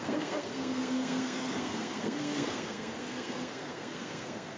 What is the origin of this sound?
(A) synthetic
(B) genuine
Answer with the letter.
A